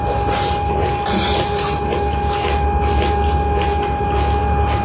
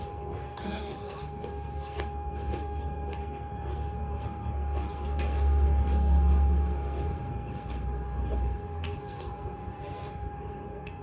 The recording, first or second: first